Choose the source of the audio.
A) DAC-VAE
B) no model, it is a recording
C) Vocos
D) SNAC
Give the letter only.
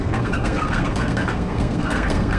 D